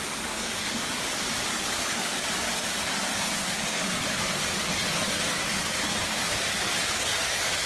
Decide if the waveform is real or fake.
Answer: fake